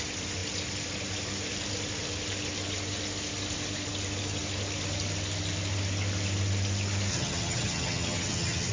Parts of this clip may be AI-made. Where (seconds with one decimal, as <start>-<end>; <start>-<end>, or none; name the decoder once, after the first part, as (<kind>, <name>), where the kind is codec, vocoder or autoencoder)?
7.1-8.7 (vocoder, HiFi-GAN)